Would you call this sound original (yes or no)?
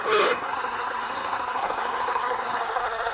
no